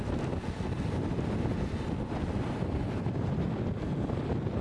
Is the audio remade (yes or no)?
no